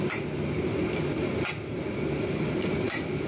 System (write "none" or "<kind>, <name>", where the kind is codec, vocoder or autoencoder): none